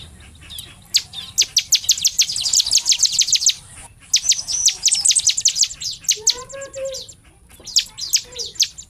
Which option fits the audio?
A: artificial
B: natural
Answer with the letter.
B